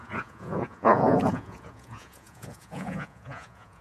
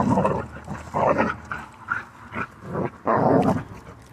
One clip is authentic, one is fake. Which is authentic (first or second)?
second